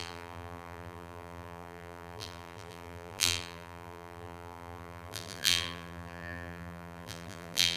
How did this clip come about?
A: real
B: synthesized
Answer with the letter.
B